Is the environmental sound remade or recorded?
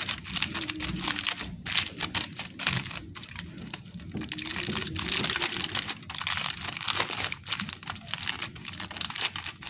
recorded